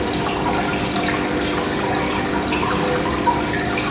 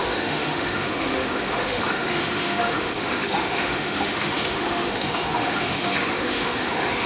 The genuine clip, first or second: first